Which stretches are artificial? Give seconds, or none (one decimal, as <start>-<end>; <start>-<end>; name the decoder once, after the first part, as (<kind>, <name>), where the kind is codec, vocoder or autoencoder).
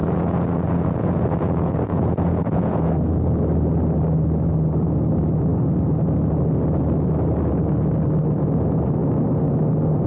0.0-2.9 (vocoder, Vocos)